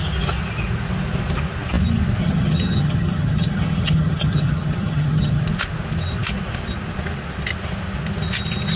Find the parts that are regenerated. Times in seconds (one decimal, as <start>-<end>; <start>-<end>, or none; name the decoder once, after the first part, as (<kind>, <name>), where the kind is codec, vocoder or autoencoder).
2.2-5.4 (vocoder, HiFi-GAN)